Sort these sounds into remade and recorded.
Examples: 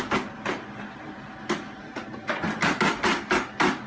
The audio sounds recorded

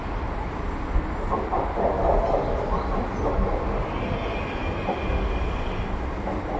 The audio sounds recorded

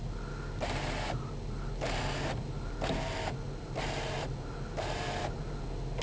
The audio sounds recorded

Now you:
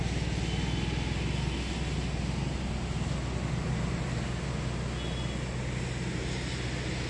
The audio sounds recorded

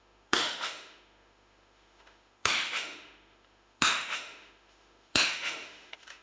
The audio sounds remade